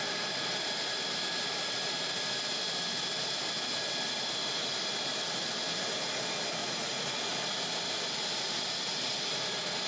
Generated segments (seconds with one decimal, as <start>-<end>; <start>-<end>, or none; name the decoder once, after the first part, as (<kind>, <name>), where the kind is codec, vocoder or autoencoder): 6.6-7.2 (vocoder, Vocos)